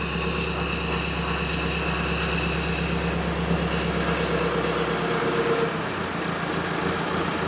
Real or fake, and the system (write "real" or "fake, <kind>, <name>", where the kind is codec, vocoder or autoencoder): real